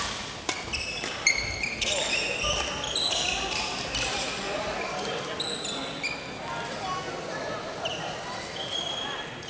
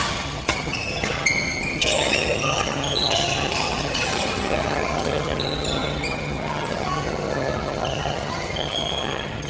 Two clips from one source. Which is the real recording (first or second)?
first